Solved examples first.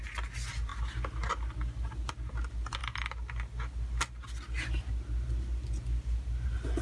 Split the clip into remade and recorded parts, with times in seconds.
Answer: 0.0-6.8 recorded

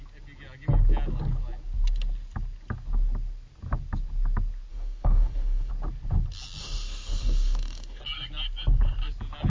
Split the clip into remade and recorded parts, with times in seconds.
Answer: 0.0-4.7 recorded; 4.7-5.7 remade; 5.7-6.6 recorded; 6.6-8.0 remade; 8.0-9.5 recorded

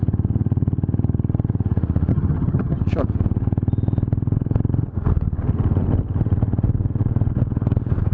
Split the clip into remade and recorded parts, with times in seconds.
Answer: 0.0-2.1 recorded; 2.1-2.8 remade; 2.8-8.1 recorded

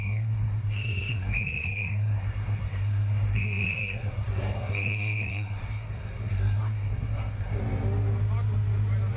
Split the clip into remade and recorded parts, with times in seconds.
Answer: 0.0-7.6 remade; 7.6-9.2 recorded

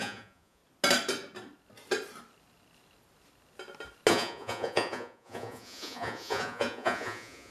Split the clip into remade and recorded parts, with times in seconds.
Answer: 0.0-0.6 remade; 0.6-4.1 recorded; 4.1-7.5 remade

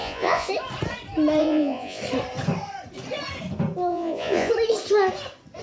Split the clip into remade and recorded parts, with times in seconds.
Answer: 0.0-0.5 remade; 0.5-1.4 recorded; 1.4-2.0 remade; 2.0-3.9 recorded; 3.9-4.5 remade; 4.5-5.6 recorded

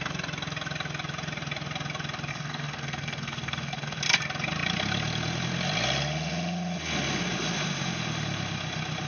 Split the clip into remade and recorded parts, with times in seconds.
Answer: 0.0-2.3 recorded; 2.3-4.0 remade; 4.0-9.1 recorded